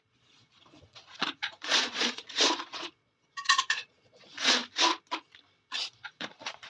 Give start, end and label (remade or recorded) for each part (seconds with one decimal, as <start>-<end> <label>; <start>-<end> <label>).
0.0-4.6 remade; 4.6-5.6 recorded; 5.6-6.7 remade